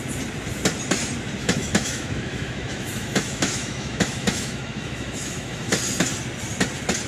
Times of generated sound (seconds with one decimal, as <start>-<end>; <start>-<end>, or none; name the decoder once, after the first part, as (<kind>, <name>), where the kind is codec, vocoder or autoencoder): 1.4-5.7 (autoencoder, DAC-VAE)